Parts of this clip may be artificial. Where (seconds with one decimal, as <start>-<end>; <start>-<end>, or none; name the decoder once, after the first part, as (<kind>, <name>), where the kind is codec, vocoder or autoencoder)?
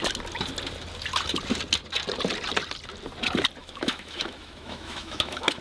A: 3.6-5.6 (autoencoder, DAC-VAE)